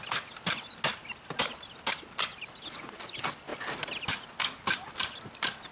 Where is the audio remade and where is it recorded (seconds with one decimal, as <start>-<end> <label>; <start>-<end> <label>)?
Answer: 0.0-5.7 recorded